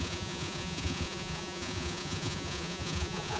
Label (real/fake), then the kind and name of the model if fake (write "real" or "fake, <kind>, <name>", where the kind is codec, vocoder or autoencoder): fake, vocoder, Vocos